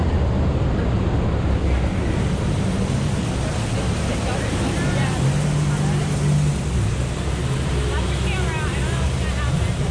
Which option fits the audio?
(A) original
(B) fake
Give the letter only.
A